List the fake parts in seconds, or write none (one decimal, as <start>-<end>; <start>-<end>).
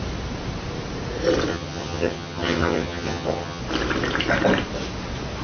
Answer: 1.5-3.6